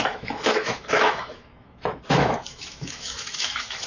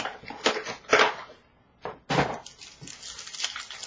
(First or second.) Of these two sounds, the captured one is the second